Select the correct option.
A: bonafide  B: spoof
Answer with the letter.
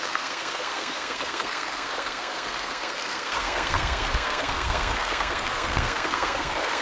B